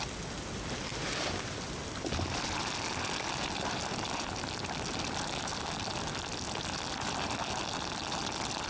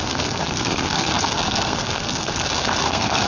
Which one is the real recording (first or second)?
first